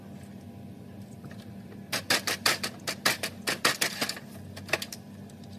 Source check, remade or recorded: recorded